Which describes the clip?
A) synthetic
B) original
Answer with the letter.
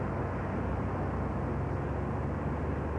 B